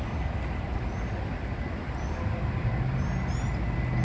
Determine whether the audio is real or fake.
real